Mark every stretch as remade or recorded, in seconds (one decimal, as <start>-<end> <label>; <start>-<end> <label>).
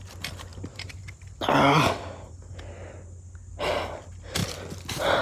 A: 0.0-5.2 recorded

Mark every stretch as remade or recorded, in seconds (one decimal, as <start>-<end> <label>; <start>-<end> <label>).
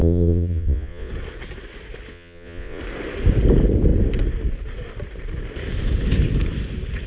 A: 0.0-1.1 remade; 1.1-2.1 recorded; 2.1-2.8 remade; 2.8-7.1 recorded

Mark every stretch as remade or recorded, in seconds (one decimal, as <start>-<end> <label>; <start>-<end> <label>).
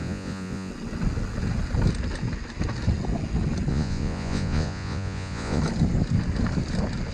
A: 0.0-0.7 remade; 0.7-3.7 recorded; 3.7-5.6 remade; 5.6-7.1 recorded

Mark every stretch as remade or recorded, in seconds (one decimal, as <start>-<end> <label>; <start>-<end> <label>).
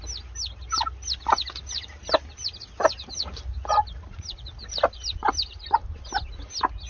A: 0.0-6.9 recorded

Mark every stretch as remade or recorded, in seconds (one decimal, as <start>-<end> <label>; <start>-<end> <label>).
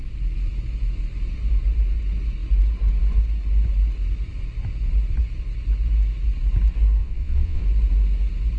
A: 0.0-7.0 recorded; 7.0-7.6 remade; 7.6-8.6 recorded